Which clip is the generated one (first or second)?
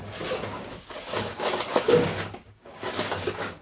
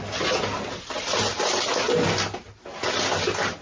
first